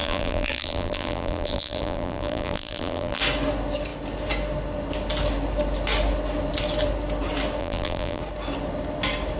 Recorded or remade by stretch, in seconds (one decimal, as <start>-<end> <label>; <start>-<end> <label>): 0.0-3.2 remade; 3.2-7.6 recorded; 7.6-8.2 remade; 8.2-9.4 recorded